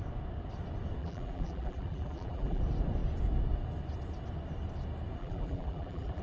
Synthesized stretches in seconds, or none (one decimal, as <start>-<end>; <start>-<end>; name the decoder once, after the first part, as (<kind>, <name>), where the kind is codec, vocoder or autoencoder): 1.0-2.6 (vocoder, BigVGAN v2); 5.2-6.2

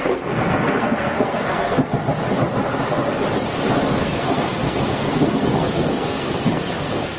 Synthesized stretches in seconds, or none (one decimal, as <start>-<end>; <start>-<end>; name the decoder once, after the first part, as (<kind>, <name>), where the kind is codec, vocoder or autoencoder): 0.0-2.0 (codec, SNAC); 4.0-7.2

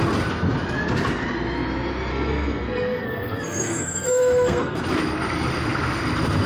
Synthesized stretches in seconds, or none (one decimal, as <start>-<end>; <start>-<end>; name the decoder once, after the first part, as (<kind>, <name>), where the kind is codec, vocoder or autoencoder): 2.1-4.8 (codec, SNAC)

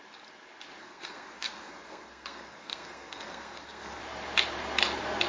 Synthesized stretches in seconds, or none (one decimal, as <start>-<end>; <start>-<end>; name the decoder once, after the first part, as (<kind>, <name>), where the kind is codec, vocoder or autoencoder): 0.8-4.0 (codec, SNAC)